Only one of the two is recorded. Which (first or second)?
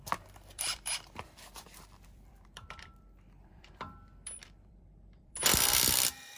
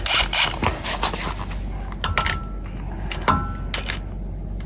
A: second